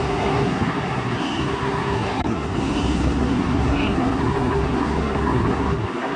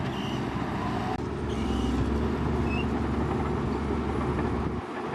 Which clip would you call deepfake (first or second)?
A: first